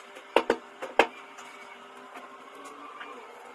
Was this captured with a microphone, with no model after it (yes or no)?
yes